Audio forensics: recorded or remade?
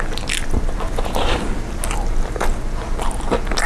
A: recorded